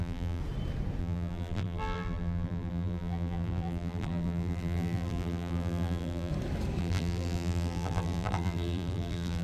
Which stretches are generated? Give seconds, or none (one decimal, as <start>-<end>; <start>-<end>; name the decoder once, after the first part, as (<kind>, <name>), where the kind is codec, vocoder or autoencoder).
0.0-0.4 (vocoder, BigVGAN v2); 1.0-6.3; 6.8-9.4